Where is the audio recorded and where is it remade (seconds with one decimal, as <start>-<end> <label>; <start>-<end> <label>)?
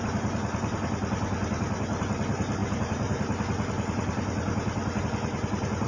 0.0-5.9 recorded